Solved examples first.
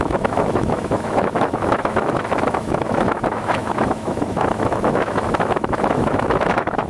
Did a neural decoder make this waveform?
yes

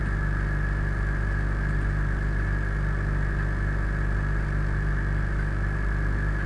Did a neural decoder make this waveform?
no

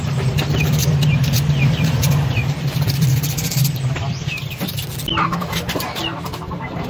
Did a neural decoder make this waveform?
yes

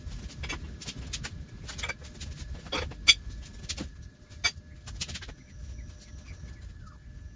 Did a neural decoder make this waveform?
no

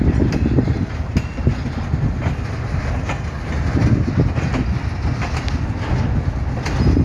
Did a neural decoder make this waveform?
no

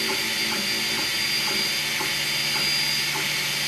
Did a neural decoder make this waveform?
no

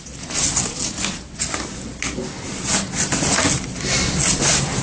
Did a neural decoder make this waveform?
no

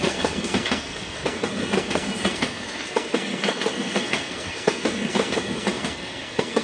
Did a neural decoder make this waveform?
yes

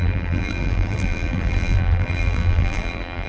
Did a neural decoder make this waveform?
yes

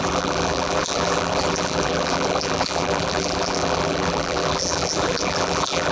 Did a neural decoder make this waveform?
yes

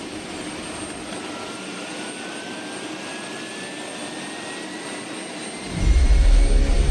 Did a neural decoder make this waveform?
no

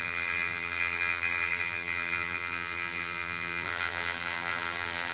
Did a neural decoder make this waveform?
yes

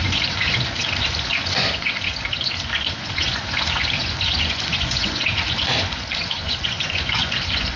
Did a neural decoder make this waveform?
yes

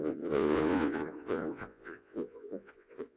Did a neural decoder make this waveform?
yes